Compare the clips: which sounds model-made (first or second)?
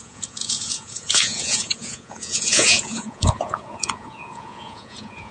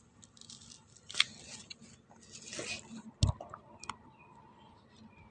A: first